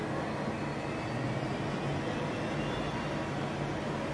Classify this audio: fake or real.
real